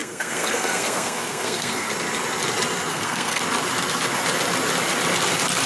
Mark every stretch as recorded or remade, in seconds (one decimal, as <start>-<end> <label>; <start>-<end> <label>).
0.0-1.9 remade; 1.9-2.9 recorded; 2.9-3.4 remade; 3.4-5.7 recorded